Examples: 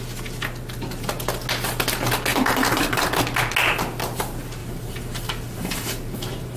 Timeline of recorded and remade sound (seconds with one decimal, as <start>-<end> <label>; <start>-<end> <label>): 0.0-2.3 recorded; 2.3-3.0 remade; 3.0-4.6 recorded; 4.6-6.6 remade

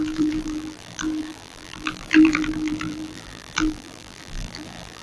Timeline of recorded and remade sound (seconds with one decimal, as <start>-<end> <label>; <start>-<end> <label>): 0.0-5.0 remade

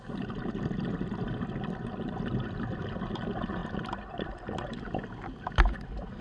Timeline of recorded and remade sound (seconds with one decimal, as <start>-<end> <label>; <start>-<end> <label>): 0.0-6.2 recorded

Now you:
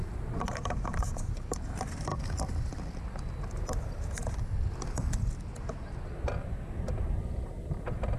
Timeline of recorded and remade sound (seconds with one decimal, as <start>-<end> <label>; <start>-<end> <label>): 0.0-2.1 remade; 2.1-7.0 recorded; 7.0-8.2 remade

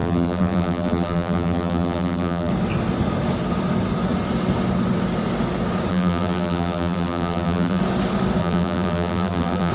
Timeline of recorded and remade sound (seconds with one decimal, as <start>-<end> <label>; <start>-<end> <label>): 0.0-2.5 remade; 2.5-5.9 recorded; 5.9-7.8 remade; 7.8-8.4 recorded; 8.4-9.7 remade

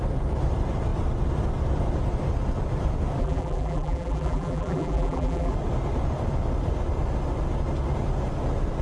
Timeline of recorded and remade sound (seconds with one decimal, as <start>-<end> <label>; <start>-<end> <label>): 0.0-3.2 recorded; 3.2-5.5 remade; 5.5-8.8 recorded